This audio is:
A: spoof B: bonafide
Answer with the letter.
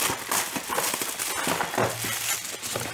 B